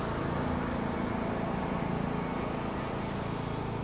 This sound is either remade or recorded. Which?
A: recorded